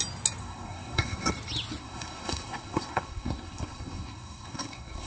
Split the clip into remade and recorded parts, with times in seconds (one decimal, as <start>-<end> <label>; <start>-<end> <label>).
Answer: 0.0-0.4 recorded; 0.4-1.3 remade; 1.3-1.8 recorded; 1.8-5.1 remade